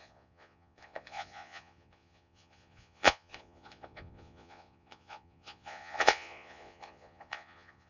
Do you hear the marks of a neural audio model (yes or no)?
yes